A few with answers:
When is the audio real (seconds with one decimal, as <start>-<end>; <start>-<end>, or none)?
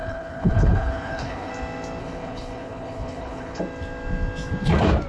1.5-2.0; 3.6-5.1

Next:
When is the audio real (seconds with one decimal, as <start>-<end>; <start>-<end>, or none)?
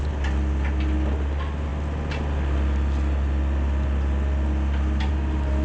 0.0-5.6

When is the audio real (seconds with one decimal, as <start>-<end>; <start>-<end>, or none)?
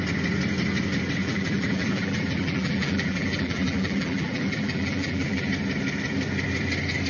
0.0-1.2; 5.5-7.1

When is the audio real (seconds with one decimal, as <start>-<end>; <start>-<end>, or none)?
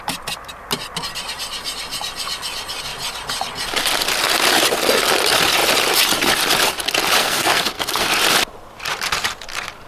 0.0-7.2; 8.2-9.9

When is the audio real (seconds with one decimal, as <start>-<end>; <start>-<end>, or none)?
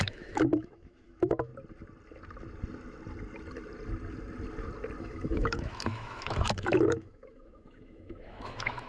1.5-5.0